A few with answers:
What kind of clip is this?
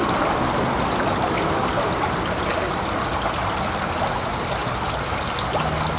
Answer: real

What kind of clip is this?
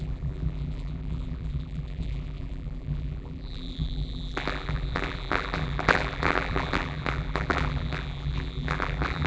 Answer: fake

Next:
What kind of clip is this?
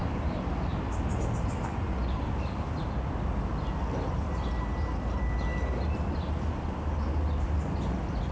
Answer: real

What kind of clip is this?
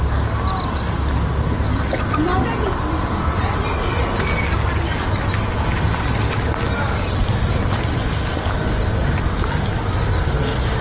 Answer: real